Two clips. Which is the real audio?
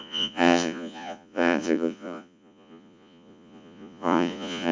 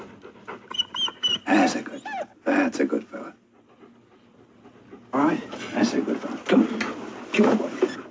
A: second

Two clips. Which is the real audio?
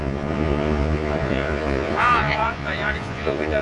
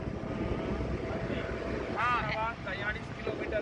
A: second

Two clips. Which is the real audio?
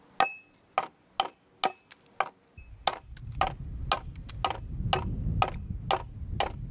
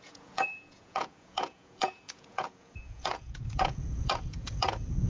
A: first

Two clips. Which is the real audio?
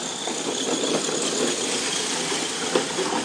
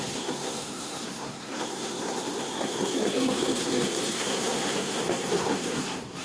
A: first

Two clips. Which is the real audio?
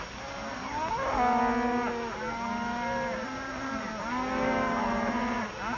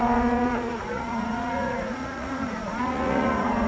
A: first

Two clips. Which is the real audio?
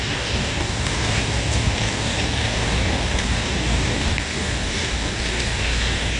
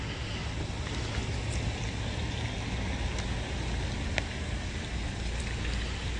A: second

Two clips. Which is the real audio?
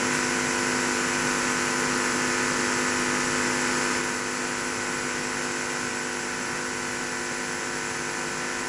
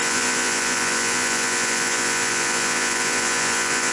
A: first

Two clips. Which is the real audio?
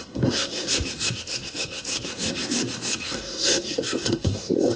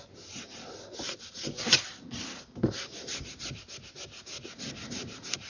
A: second